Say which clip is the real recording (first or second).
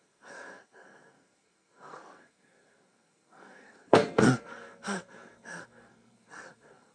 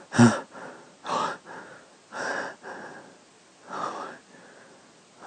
second